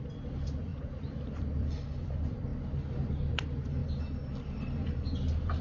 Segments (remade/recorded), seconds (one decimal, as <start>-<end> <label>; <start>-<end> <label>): 0.0-2.5 remade; 2.5-3.4 recorded; 3.4-3.8 remade; 3.8-4.4 recorded; 4.4-5.6 remade